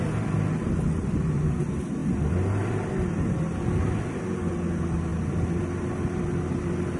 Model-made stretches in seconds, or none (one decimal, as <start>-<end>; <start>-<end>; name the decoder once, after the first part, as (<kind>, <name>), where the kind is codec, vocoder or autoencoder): none